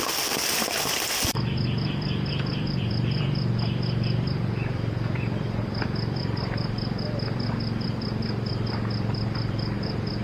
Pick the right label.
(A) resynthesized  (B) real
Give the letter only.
A